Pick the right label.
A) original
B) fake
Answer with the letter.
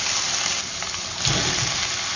A